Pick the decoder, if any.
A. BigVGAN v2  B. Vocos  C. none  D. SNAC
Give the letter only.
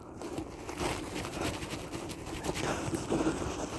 C